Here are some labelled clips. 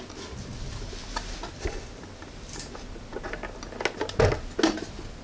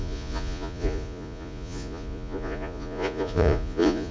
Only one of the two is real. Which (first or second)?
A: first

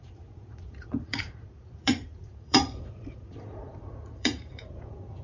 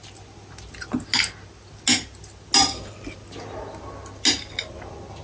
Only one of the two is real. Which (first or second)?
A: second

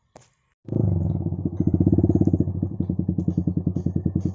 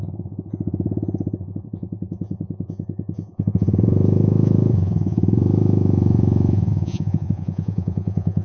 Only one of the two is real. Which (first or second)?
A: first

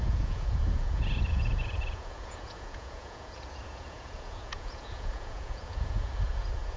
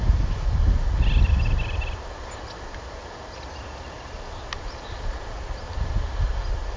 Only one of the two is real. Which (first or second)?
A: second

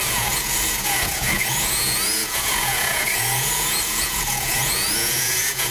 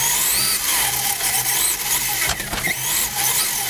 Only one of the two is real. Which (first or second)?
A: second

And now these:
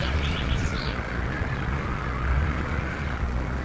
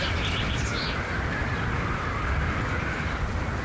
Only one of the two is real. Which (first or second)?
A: second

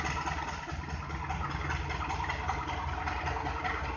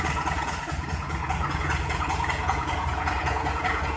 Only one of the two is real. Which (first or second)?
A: first